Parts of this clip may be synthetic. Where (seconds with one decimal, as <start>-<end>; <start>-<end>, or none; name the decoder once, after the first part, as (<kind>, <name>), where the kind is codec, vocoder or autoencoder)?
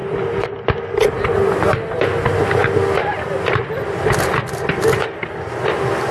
none